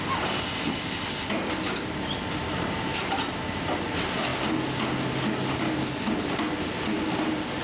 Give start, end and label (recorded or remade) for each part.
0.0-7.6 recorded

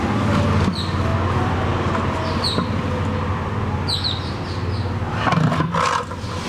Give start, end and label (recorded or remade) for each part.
0.0-6.5 recorded